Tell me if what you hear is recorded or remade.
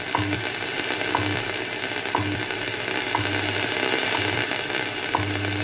recorded